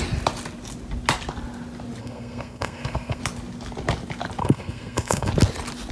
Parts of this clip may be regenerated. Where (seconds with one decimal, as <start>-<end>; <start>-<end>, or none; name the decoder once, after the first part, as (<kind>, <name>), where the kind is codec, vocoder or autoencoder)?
2.0-3.2 (codec, SNAC); 4.4-5.3